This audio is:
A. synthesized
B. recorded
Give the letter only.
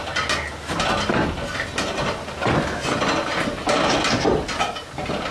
B